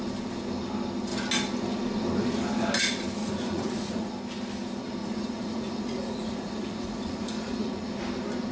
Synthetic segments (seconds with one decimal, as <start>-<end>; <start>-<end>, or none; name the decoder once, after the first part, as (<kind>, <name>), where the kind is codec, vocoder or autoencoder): 3.2-4.1 (vocoder, Vocos); 5.0-7.9